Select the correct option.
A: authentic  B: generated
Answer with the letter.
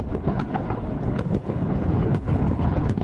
B